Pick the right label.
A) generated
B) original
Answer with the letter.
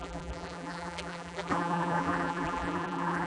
A